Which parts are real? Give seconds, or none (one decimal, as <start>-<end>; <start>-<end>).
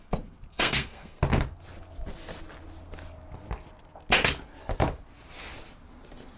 0.0-0.5; 1.2-6.4